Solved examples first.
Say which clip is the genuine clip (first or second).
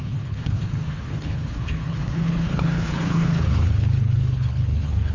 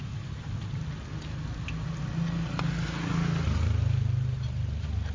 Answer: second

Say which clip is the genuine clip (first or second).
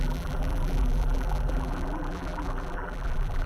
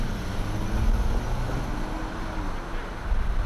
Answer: second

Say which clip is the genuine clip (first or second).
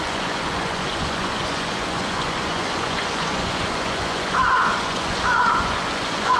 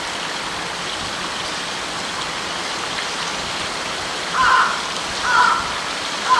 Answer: second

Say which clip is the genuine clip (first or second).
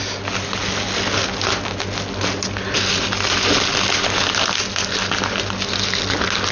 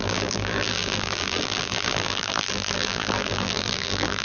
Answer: first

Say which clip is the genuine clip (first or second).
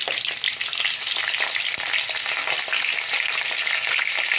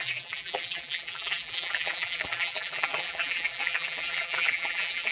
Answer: first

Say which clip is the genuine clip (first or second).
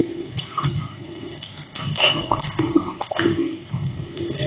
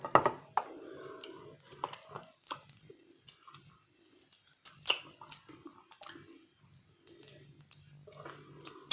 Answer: second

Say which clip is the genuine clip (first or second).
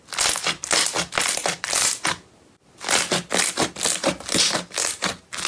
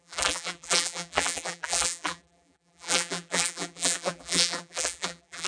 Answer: first